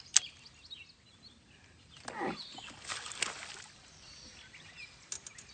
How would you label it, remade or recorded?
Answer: recorded